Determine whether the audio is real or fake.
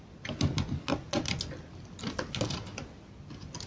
real